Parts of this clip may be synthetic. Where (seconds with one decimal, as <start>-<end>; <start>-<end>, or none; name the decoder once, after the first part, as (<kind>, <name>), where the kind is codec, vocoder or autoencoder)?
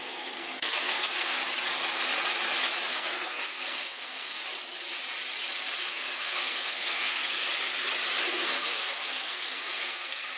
0.0-1.4 (codec, SNAC); 2.9-4.4; 5.8-7.4; 8.3-10.4